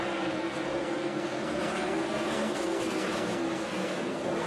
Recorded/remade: remade